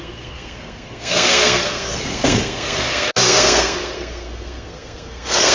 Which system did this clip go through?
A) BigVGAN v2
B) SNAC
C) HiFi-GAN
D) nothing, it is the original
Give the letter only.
B